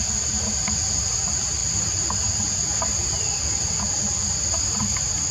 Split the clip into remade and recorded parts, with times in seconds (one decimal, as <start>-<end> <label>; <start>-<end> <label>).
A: 0.0-5.3 recorded